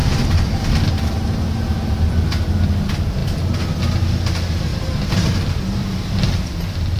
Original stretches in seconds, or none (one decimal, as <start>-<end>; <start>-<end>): 2.2-4.7; 6.5-7.0